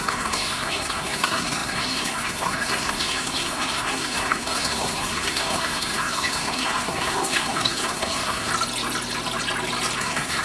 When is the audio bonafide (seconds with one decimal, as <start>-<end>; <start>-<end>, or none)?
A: 8.5-10.0